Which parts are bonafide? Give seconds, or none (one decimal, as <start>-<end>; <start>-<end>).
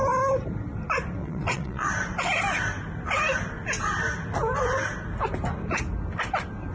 0.0-1.2; 1.9-6.7